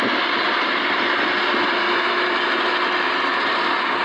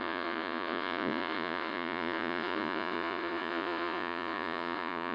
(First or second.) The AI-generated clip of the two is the second